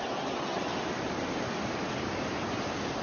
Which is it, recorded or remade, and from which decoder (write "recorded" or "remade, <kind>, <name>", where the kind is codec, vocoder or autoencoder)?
recorded